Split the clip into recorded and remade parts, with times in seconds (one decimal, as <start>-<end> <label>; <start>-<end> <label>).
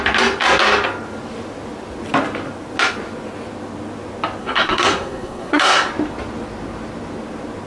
0.0-4.4 recorded; 4.4-5.9 remade; 5.9-7.7 recorded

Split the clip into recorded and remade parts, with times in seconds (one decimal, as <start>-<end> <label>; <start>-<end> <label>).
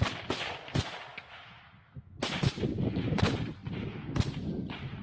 0.0-1.1 recorded; 1.1-2.2 remade; 2.2-5.0 recorded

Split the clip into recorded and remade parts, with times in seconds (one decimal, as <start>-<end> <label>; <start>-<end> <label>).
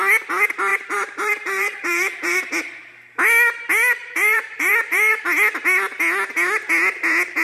0.0-0.7 recorded; 0.7-2.4 remade; 2.4-4.0 recorded; 4.0-5.2 remade; 5.2-7.4 recorded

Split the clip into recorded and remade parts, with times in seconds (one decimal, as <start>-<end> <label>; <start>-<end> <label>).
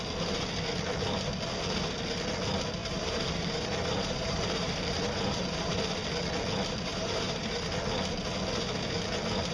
0.0-2.8 recorded; 2.8-5.7 remade; 5.7-6.9 recorded; 6.9-7.7 remade; 7.7-9.5 recorded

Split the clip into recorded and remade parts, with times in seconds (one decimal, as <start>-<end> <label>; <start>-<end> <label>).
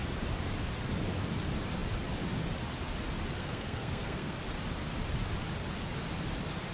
0.0-3.4 recorded; 3.4-4.4 remade; 4.4-6.7 recorded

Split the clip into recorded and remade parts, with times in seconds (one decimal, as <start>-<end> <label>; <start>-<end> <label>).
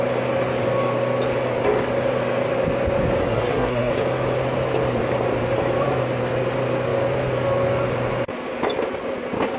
0.0-3.2 recorded; 3.2-3.9 remade; 3.9-9.6 recorded